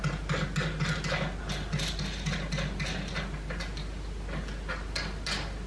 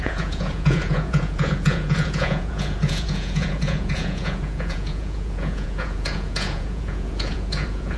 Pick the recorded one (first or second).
first